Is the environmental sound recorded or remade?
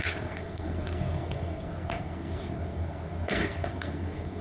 remade